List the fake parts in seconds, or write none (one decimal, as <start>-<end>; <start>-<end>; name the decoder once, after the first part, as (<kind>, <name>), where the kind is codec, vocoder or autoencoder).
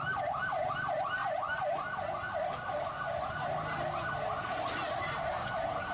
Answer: 0.0-1.2 (vocoder, BigVGAN v2); 4.7-5.9